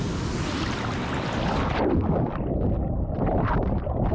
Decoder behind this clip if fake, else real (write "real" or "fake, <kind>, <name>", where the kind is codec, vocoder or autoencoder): real